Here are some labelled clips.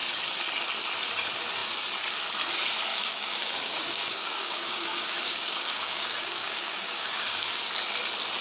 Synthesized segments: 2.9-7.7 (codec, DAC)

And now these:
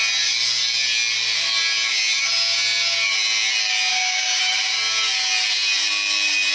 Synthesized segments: 3.9-4.4 (codec, DAC)

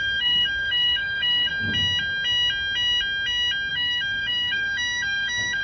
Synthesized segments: 0.0-1.5 (codec, DAC); 3.7-5.6

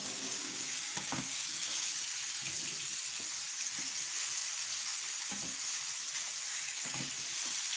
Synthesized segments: 0.0-2.1 (codec, DAC); 6.5-7.1

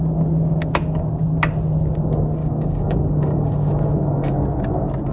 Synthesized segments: 2.4-4.3 (codec, DAC)

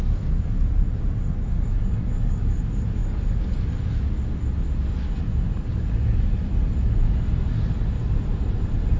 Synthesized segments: 1.7-2.4 (codec, DAC)

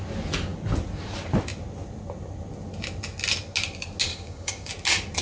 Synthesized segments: 4.1-4.7 (codec, DAC)

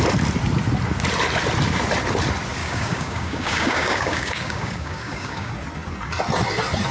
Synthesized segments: 2.6-5.5 (codec, DAC)